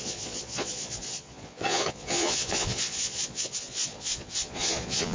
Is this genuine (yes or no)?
no